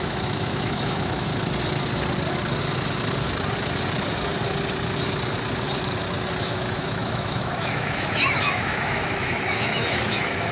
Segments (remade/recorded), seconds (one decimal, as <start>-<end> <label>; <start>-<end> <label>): 0.0-1.3 remade; 1.3-6.4 recorded; 6.4-10.5 remade